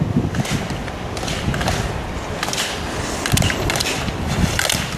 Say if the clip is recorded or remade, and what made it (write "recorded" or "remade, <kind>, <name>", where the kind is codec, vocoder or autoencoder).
recorded